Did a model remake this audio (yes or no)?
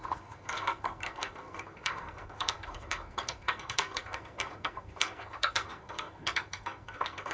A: yes